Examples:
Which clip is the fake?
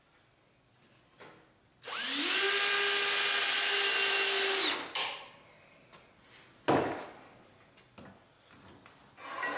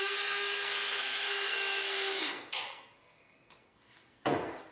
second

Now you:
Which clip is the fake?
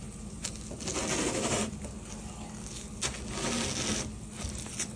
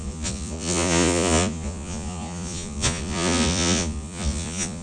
second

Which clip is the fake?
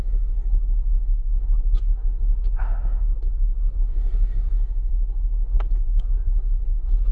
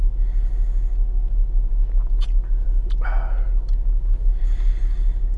first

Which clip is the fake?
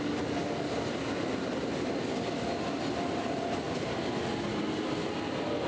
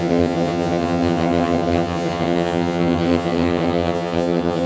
second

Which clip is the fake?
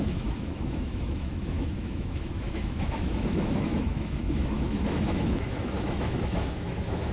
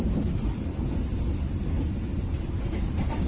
first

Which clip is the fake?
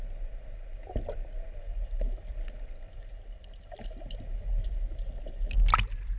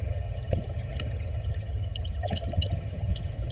second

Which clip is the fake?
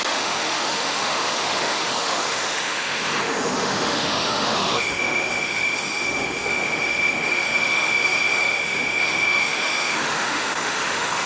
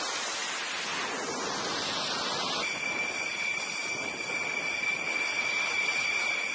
first